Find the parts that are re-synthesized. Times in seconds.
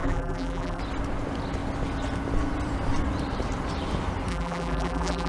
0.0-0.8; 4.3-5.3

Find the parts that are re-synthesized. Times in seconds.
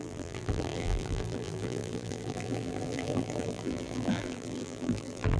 0.0-5.4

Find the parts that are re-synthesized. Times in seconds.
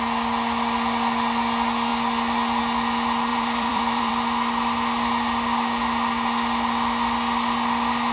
3.3-4.1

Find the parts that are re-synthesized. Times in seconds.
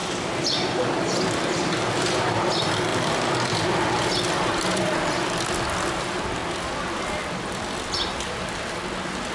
0.0-9.3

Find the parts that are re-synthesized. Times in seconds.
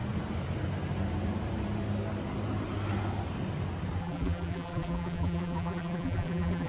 4.0-6.7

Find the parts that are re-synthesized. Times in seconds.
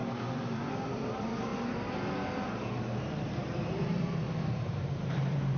0.0-5.6